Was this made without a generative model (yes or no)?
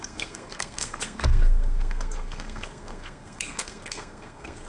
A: no